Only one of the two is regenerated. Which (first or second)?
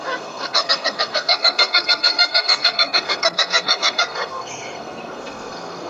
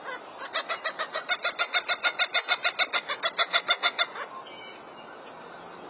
first